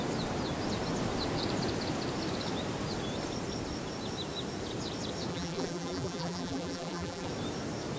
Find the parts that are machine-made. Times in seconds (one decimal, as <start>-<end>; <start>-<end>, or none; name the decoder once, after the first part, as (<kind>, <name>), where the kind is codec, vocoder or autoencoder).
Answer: 5.3-7.3 (vocoder, BigVGAN v2)